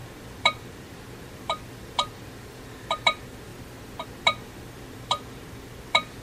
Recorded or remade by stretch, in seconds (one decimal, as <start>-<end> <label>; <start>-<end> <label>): 0.0-3.5 remade; 3.5-4.2 recorded; 4.2-6.2 remade